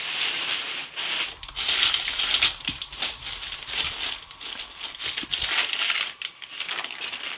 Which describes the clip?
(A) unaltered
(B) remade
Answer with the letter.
A